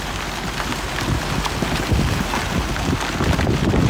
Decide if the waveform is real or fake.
real